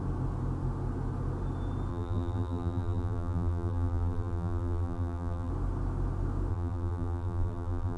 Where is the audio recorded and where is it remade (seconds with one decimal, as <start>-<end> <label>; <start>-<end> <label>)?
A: 0.0-1.9 recorded; 1.9-5.5 remade; 5.5-6.5 recorded; 6.5-8.0 remade